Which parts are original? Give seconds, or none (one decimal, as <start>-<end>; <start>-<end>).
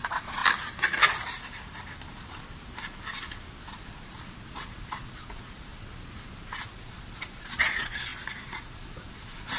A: 0.4-3.6; 5.7-6.6